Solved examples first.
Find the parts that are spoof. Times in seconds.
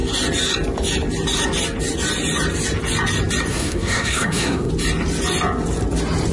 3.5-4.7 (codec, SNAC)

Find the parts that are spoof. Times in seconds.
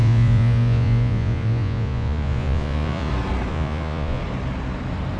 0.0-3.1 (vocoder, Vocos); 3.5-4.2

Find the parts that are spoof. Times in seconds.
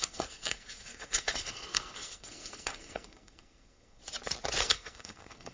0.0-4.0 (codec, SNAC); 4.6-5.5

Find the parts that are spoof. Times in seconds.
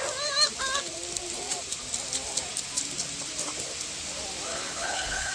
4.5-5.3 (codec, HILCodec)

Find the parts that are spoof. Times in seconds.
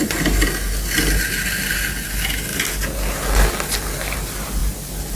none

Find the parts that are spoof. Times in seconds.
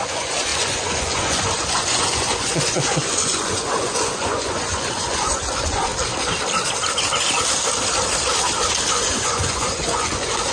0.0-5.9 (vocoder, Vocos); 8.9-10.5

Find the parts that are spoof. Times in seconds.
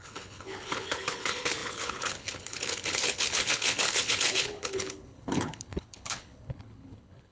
0.0-7.3 (codec, HILCodec)